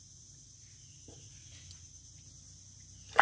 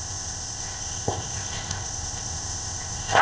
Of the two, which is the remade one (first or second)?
second